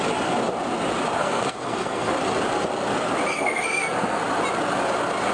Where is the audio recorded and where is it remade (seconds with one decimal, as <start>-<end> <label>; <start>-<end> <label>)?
0.0-1.2 recorded; 1.2-2.1 remade; 2.1-3.3 recorded; 3.3-4.2 remade; 4.2-5.3 recorded